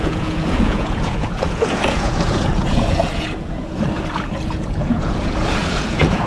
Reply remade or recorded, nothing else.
remade